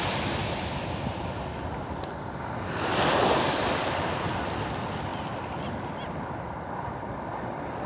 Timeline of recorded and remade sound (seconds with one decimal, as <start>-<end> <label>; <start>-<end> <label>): 0.0-7.9 recorded